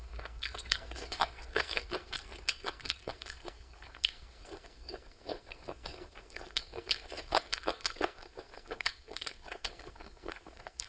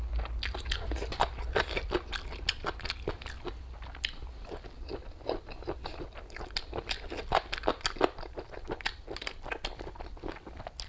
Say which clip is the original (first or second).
second